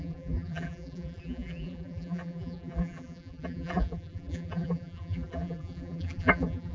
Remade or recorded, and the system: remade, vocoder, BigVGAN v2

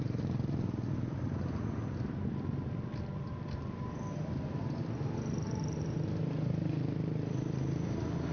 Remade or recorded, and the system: recorded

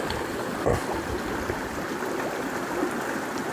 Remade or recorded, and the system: recorded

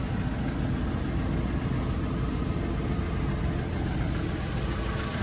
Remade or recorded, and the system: recorded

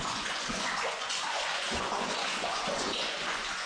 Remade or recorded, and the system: remade, vocoder, Vocos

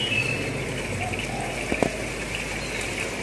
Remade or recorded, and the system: recorded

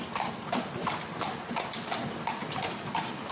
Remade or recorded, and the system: recorded